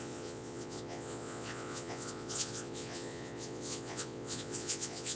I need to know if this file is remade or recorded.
remade